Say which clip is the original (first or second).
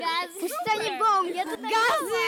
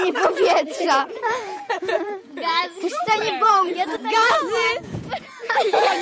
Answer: first